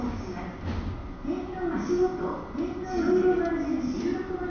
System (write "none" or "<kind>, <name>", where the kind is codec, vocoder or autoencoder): none